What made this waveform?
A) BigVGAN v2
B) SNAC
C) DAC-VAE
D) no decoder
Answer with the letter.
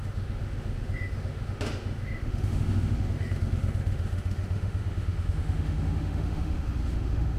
C